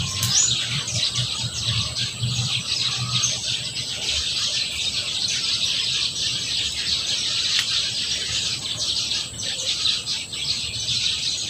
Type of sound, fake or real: real